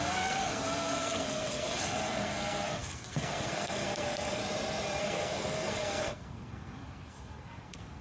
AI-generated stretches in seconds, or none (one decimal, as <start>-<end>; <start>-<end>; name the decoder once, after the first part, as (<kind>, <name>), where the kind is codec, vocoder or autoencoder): 0.0-4.4 (codec, SNAC); 5.0-8.0